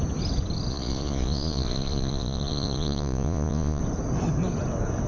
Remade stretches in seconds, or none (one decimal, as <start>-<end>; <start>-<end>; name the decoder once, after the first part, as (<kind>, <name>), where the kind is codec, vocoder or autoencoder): 0.7-3.8 (vocoder, Vocos)